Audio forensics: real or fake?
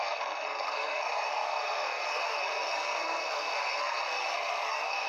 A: fake